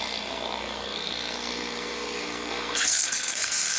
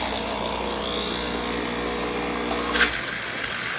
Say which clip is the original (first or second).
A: second